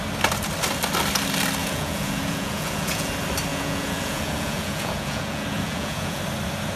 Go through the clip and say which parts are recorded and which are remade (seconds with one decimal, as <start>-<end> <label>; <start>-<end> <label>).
0.0-1.6 recorded; 1.6-3.1 remade; 3.1-3.5 recorded; 3.5-6.2 remade; 6.2-6.8 recorded